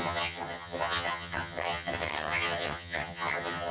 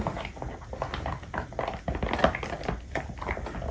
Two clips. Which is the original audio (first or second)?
second